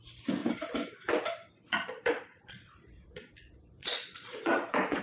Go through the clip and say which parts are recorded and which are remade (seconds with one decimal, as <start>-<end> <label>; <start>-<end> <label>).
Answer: 0.0-1.7 recorded; 1.7-5.0 remade